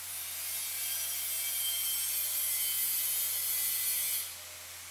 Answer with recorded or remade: recorded